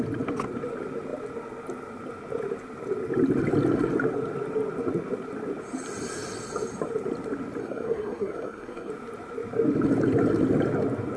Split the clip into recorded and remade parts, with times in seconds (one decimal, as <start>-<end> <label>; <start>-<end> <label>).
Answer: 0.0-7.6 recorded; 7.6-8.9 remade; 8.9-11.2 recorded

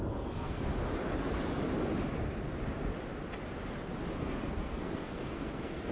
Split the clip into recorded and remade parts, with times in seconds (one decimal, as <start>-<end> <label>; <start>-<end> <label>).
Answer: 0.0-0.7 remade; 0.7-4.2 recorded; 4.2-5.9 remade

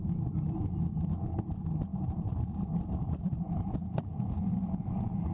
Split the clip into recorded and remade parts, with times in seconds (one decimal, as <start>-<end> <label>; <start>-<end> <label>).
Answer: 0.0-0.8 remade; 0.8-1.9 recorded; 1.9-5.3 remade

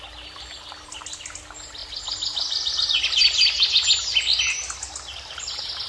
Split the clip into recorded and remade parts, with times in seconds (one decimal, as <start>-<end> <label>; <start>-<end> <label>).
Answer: 0.0-5.9 recorded

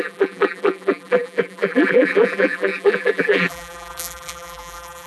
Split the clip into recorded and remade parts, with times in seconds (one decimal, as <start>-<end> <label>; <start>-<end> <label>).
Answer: 0.0-5.1 remade

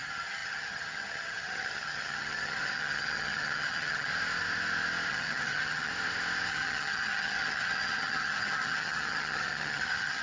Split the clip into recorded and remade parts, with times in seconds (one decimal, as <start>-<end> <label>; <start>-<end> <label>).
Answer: 0.0-4.1 remade; 4.1-5.1 recorded; 5.1-5.9 remade; 5.9-6.5 recorded; 6.5-10.2 remade

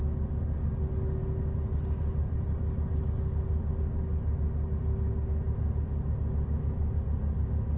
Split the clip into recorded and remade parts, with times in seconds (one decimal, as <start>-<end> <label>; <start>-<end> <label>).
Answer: 0.0-7.8 recorded

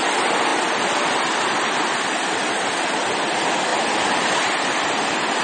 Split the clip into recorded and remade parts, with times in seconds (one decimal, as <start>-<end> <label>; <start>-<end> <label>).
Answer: 0.0-5.4 recorded